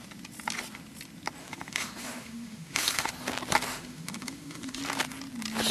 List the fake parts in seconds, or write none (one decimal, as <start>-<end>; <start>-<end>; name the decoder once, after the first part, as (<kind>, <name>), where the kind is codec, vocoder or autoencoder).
1.4-3.1 (autoencoder, DAC-VAE); 3.7-4.8